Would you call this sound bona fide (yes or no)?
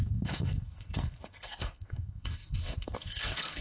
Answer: no